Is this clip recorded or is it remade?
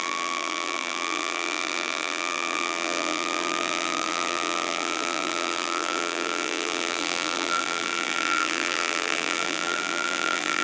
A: remade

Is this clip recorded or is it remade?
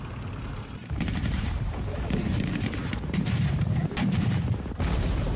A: remade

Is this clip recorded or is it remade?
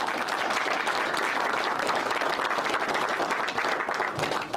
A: recorded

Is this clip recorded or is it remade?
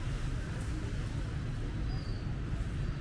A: recorded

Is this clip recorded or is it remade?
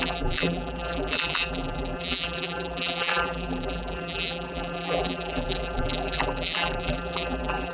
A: remade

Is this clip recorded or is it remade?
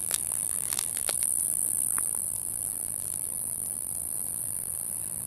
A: remade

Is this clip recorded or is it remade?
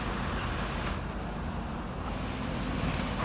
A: remade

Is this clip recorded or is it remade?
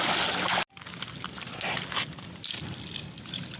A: recorded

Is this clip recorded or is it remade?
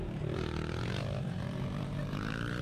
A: remade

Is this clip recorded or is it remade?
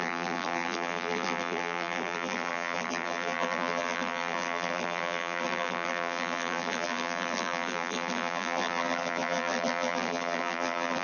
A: remade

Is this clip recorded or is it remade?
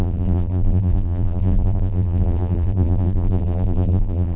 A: remade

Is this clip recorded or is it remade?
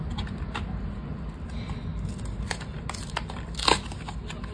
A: recorded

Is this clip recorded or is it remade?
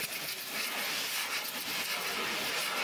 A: recorded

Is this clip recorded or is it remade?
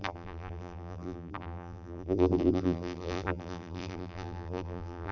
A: remade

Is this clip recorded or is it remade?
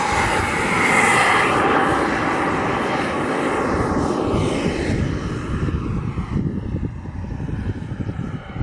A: recorded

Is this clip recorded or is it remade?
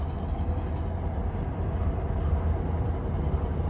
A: recorded